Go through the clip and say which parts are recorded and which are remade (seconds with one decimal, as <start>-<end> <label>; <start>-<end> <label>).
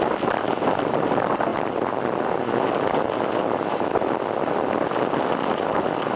0.0-6.2 recorded